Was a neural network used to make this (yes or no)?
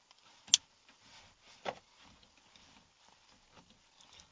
no